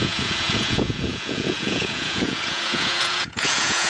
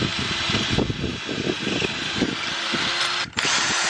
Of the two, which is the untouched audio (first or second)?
second